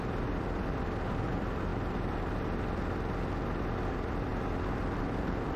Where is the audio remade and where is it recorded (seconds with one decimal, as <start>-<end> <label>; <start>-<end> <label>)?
0.0-1.7 remade; 1.7-3.9 recorded; 3.9-4.3 remade; 4.3-5.0 recorded; 5.0-5.6 remade